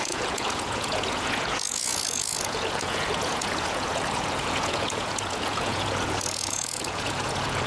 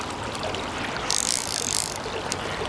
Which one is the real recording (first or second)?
second